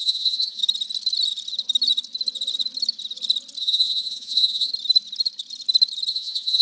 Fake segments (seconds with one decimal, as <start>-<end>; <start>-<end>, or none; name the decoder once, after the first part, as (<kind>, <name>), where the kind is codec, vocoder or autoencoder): 0.0-0.6 (vocoder, Vocos); 3.6-4.7; 6.1-6.6